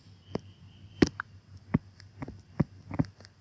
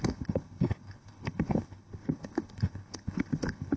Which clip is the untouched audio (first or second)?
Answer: first